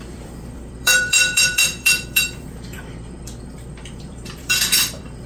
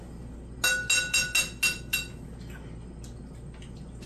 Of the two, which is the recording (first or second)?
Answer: second